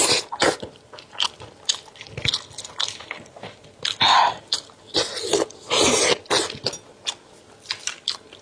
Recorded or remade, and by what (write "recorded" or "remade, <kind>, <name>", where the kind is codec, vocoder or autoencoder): recorded